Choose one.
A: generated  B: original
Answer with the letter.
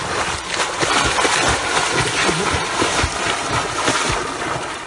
B